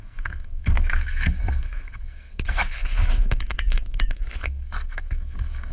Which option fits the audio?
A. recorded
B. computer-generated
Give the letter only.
B